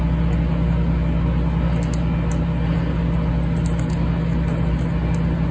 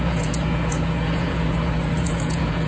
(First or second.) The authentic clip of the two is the first